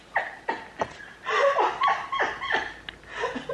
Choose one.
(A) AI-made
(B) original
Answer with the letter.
B